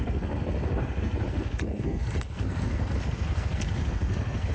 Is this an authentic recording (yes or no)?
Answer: no